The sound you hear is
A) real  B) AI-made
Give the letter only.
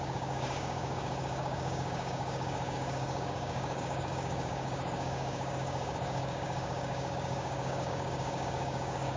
B